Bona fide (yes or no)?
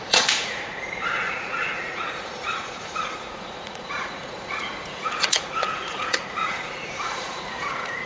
no